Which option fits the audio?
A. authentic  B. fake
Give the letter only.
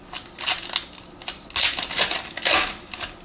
A